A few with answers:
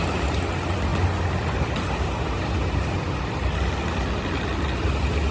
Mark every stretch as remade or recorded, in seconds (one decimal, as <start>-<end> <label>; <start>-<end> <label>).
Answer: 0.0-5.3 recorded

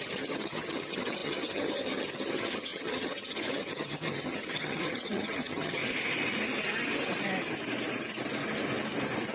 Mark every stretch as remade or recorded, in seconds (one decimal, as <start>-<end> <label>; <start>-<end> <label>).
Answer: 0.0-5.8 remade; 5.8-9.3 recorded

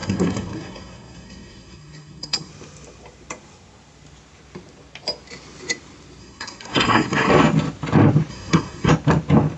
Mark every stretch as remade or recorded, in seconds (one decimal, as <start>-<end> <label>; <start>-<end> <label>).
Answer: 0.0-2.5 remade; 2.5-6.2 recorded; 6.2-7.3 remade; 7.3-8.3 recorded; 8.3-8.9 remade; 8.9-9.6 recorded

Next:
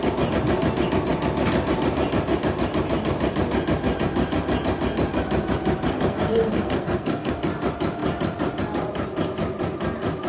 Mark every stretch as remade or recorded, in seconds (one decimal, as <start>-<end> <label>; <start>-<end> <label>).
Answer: 0.0-5.9 recorded; 5.9-7.3 remade; 7.3-10.3 recorded

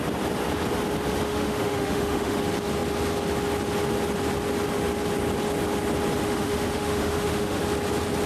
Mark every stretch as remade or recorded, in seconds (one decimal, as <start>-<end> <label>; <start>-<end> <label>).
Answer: 0.0-1.3 recorded; 1.3-2.4 remade; 2.4-6.2 recorded; 6.2-7.6 remade; 7.6-8.3 recorded

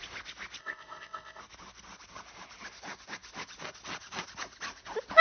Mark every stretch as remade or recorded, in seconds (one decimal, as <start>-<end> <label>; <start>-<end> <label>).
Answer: 0.0-0.6 recorded; 0.6-1.4 remade; 1.4-5.2 recorded